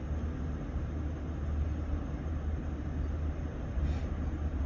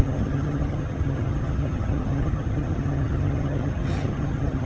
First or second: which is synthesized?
second